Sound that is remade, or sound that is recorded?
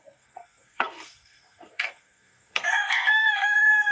remade